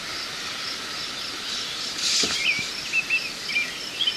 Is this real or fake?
real